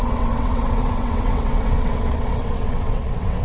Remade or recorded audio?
remade